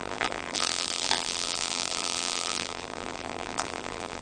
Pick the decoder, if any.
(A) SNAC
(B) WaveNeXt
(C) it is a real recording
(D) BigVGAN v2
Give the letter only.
D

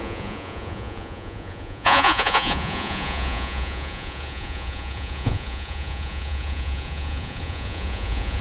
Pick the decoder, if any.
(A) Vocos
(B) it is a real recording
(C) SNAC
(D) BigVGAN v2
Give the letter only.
A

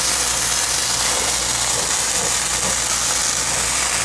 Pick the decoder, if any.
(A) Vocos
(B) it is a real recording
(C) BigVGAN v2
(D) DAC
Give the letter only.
B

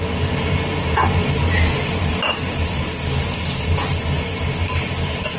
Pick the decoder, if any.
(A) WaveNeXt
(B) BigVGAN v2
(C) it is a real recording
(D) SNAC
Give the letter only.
C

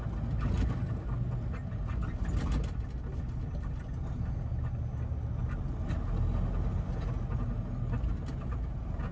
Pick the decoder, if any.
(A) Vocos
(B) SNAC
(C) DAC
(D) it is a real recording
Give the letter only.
D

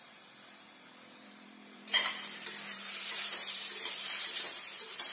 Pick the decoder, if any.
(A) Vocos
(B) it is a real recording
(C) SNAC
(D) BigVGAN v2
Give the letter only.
D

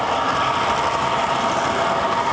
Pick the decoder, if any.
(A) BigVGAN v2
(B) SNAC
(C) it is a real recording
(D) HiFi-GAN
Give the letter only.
C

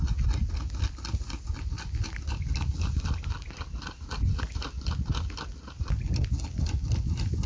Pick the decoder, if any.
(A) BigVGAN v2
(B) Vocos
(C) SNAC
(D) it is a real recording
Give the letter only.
D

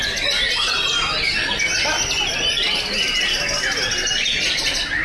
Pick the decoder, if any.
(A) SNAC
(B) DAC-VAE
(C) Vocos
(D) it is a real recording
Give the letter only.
D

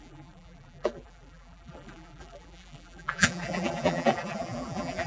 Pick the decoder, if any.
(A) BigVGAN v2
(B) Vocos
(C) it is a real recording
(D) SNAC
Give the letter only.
A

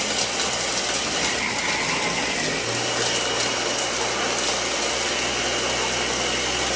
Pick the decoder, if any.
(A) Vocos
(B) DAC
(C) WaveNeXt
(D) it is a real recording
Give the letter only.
D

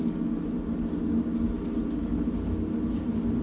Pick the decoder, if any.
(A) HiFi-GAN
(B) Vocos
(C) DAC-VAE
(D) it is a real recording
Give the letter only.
D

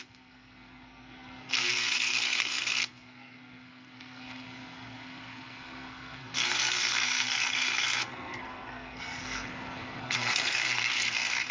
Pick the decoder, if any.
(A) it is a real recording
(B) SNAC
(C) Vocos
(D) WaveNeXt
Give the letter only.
B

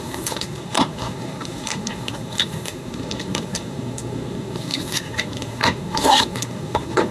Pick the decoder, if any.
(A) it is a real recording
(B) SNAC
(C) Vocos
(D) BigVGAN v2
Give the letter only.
B